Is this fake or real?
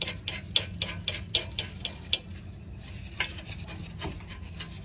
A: real